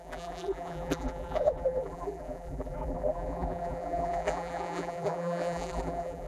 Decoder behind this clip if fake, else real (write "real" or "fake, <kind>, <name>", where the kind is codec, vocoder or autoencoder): fake, vocoder, BigVGAN v2